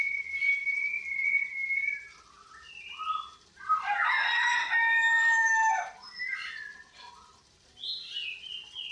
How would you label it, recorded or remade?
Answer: recorded